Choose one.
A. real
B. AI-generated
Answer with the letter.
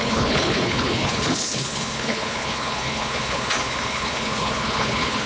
B